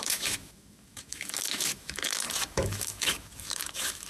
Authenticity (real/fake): fake